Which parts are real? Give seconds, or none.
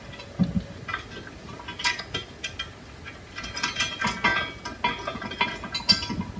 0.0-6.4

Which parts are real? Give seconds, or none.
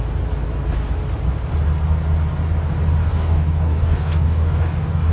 0.0-3.0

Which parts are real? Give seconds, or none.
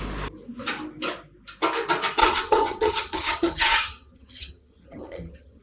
0.0-2.2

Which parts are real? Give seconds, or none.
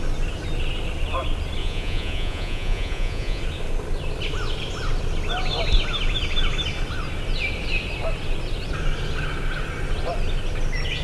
0.0-1.6; 3.4-11.0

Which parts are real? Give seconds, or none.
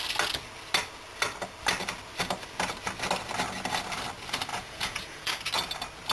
0.0-4.5; 5.3-6.1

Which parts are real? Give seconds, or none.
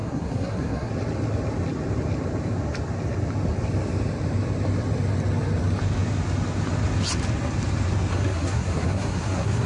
0.9-8.1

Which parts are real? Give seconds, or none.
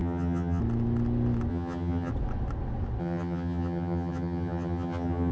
0.6-1.5; 2.1-3.0